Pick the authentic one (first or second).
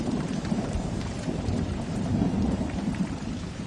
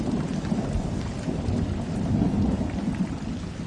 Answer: second